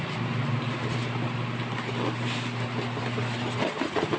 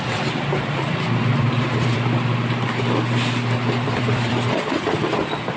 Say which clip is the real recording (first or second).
first